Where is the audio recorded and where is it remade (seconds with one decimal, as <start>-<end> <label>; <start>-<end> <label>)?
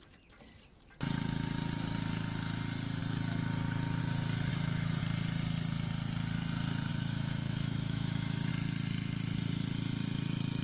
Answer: 0.0-4.5 recorded; 4.5-5.0 remade; 5.0-6.9 recorded; 6.9-8.5 remade; 8.5-10.6 recorded